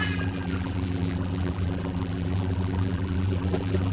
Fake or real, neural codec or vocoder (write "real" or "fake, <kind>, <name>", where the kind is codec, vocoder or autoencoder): fake, vocoder, BigVGAN v2